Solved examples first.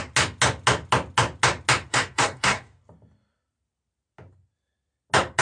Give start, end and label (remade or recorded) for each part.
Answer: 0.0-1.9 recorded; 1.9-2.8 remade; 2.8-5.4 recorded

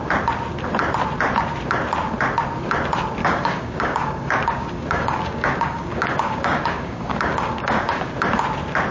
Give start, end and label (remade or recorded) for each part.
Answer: 0.0-3.2 recorded; 3.2-8.1 remade; 8.1-8.9 recorded

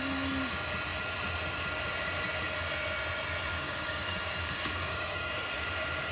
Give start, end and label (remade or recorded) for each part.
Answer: 0.0-3.5 recorded; 3.5-5.3 remade; 5.3-6.1 recorded

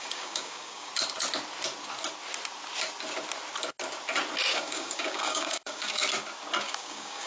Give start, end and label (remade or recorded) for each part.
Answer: 0.0-0.9 remade; 0.9-4.5 recorded; 4.5-6.0 remade; 6.0-6.6 recorded; 6.6-7.3 remade

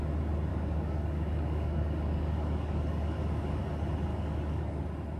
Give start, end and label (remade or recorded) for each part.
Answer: 0.0-0.5 recorded; 0.5-3.6 remade; 3.6-4.1 recorded; 4.1-4.8 remade; 4.8-5.2 recorded

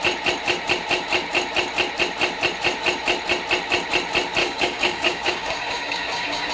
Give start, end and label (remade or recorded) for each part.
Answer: 0.0-4.4 recorded; 4.4-6.5 remade

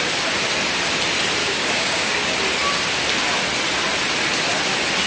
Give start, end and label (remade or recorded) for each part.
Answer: 0.0-1.4 recorded; 1.4-2.1 remade; 2.1-5.1 recorded

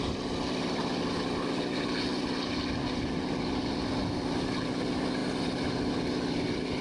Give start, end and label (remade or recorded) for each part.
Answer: 0.0-6.8 recorded